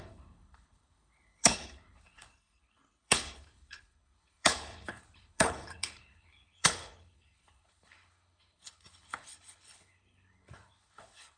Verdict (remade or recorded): remade